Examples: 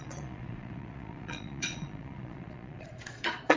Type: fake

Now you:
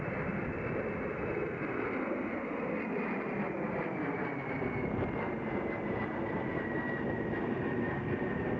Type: real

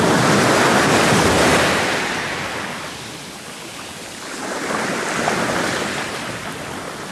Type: real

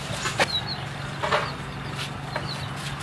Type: real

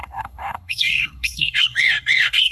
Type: fake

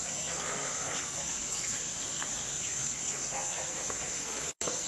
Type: fake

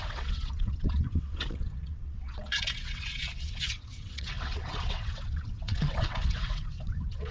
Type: fake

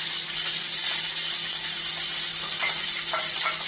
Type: real